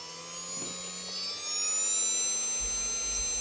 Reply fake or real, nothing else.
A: real